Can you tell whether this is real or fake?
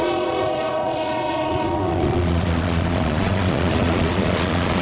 fake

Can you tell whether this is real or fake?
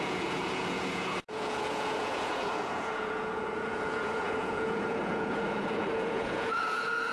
fake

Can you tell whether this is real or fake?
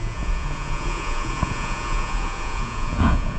fake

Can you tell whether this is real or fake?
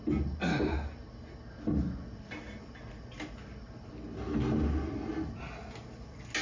real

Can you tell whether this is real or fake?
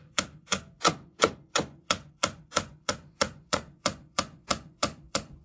fake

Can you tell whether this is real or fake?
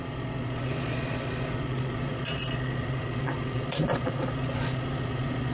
fake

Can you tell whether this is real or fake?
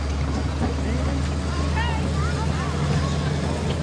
real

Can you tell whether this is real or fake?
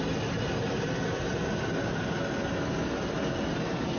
real